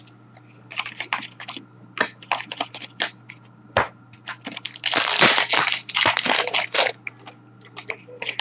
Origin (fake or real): real